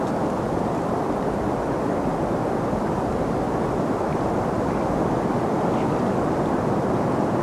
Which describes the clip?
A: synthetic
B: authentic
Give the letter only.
B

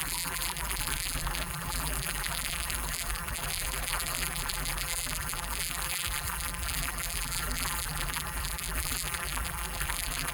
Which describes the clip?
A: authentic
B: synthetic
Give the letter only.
B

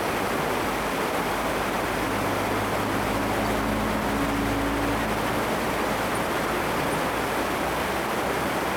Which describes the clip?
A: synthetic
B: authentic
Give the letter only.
B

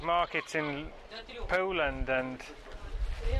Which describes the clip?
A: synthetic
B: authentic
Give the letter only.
B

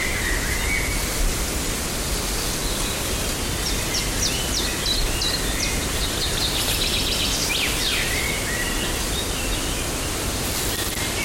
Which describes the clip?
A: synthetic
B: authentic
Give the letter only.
B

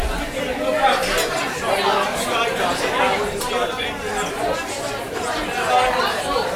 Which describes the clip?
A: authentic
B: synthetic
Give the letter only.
A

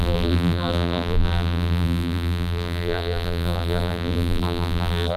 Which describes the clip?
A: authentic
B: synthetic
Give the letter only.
B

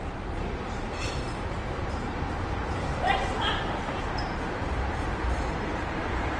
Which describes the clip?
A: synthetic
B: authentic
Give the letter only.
A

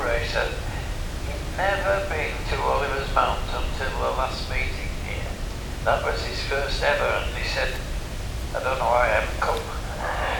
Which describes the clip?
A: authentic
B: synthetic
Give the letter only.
A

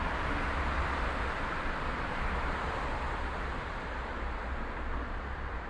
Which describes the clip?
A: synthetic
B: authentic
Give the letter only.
A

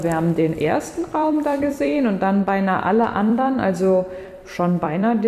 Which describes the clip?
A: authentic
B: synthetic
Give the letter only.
B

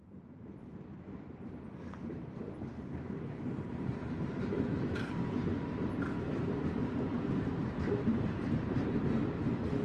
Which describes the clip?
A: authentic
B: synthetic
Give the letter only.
B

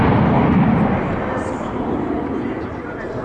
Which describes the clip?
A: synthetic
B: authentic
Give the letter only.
A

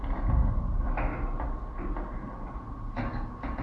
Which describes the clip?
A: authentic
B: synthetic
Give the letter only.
A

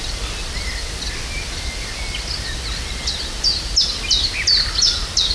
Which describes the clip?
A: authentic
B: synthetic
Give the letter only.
A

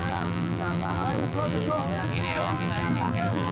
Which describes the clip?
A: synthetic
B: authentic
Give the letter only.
A